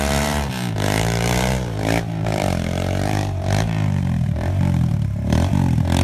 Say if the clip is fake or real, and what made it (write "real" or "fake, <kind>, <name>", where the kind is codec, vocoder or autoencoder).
fake, vocoder, BigVGAN v2